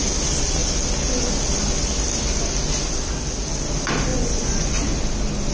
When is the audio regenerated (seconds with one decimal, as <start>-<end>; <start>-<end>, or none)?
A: 4.1-4.7